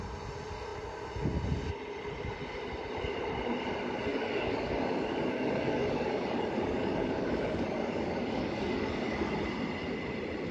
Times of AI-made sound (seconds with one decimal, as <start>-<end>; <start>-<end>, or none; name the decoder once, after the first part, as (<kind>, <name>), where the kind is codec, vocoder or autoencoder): 4.1-9.3 (codec, DAC)

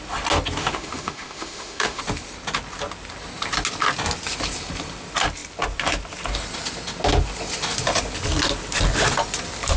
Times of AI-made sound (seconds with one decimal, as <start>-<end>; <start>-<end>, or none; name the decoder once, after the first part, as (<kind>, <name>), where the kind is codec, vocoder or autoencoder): 0.6-2.0 (autoencoder, DAC-VAE)

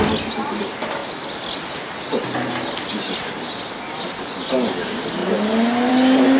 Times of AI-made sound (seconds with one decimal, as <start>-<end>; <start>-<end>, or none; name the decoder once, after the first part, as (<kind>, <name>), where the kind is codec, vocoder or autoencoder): none

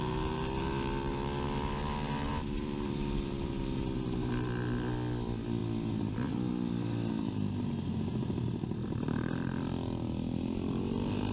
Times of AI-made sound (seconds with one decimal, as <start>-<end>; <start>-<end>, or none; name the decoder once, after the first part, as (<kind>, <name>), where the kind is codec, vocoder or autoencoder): 2.3-3.5 (vocoder, BigVGAN v2)

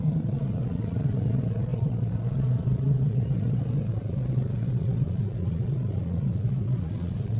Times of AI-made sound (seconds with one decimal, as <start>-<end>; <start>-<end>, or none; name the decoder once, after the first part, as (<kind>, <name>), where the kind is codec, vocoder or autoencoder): 0.0-7.4 (vocoder, Vocos)

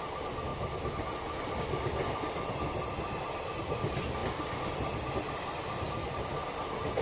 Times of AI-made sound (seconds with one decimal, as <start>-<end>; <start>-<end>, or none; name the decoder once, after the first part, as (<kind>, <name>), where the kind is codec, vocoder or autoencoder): none